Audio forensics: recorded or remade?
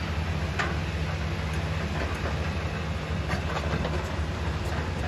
recorded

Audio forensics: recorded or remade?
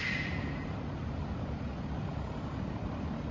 recorded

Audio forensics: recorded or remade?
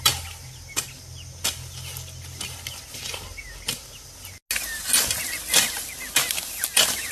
recorded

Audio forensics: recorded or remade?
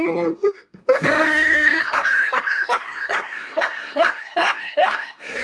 remade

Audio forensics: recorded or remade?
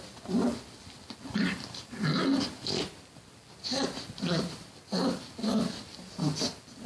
recorded